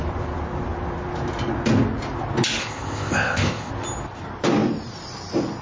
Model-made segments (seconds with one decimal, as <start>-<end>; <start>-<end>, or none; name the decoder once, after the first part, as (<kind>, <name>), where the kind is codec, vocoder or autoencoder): 2.6-3.7 (codec, ZipCodec)